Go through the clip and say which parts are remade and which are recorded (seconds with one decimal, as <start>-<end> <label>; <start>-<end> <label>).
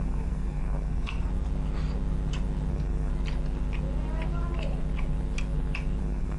0.0-1.3 remade; 1.3-2.7 recorded; 2.7-3.1 remade; 3.1-6.0 recorded; 6.0-6.4 remade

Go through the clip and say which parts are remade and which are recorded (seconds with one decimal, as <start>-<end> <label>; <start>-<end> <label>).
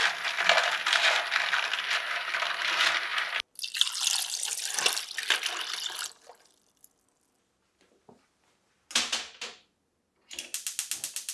0.0-11.3 recorded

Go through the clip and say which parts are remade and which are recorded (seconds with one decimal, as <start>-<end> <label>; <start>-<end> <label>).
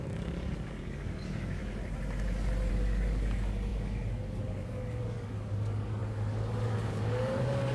0.0-1.6 remade; 1.6-2.7 recorded; 2.7-7.7 remade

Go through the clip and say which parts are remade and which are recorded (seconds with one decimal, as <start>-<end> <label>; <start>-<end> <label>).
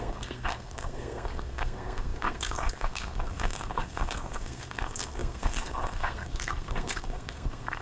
0.0-7.8 remade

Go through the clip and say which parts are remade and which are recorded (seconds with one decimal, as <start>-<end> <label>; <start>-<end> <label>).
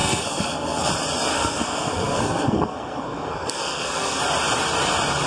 0.0-0.9 remade; 0.9-1.3 recorded; 1.3-4.2 remade; 4.2-5.3 recorded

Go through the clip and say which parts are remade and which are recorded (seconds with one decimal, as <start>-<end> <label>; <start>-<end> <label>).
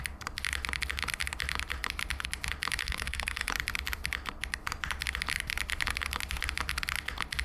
0.0-2.8 recorded; 2.8-3.5 remade; 3.5-7.4 recorded